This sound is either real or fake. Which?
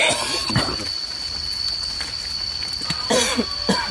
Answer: real